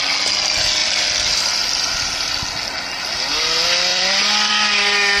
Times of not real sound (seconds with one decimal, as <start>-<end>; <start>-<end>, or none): 0.8-2.4; 3.9-4.5